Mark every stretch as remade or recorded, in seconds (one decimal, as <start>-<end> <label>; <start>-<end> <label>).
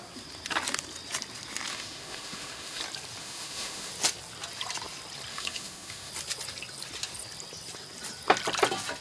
0.0-1.7 recorded; 1.7-2.8 remade; 2.8-3.2 recorded; 3.2-3.9 remade; 3.9-5.3 recorded; 5.3-6.1 remade; 6.1-9.0 recorded